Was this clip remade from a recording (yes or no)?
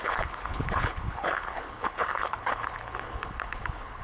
yes